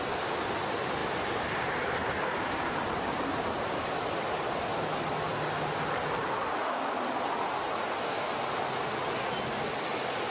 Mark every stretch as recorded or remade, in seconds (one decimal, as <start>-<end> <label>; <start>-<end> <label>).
0.0-1.0 recorded; 1.0-4.7 remade; 4.7-10.3 recorded